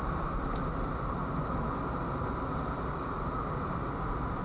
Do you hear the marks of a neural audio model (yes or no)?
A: yes